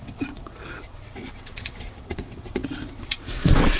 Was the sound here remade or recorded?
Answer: remade